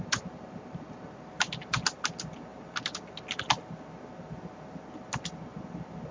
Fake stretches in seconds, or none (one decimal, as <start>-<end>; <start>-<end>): none